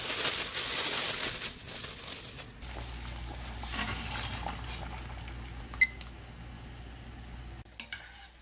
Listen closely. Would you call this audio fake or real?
real